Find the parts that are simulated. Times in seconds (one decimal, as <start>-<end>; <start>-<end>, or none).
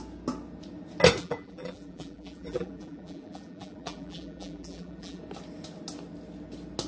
1.2-5.2